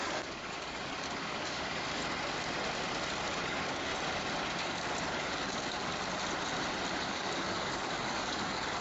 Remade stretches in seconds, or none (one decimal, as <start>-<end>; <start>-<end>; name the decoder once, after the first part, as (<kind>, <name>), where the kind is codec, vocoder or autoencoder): 0.0-2.0 (codec, DAC); 3.3-3.9; 4.6-5.9; 7.0-8.8